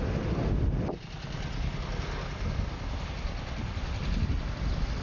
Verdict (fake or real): real